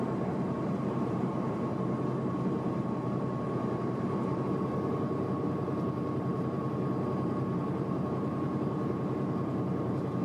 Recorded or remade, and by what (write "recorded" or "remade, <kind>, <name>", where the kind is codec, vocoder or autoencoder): remade, vocoder, BigVGAN v2